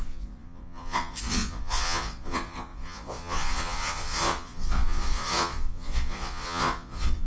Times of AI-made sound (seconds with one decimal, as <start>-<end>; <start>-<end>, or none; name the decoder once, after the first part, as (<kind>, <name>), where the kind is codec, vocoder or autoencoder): 0.0-7.3 (vocoder, Vocos)